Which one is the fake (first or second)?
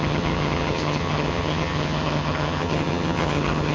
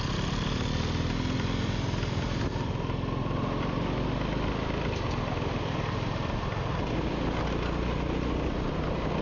first